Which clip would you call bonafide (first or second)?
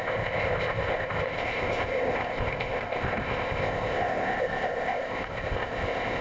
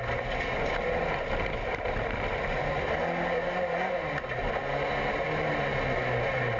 second